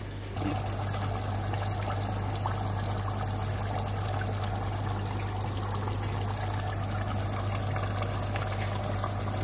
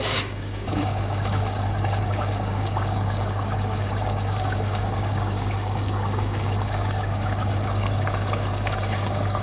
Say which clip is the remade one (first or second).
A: second